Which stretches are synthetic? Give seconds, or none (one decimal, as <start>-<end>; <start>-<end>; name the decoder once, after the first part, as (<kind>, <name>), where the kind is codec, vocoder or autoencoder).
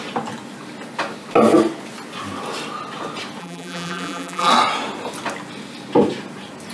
3.4-4.5 (vocoder, BigVGAN v2)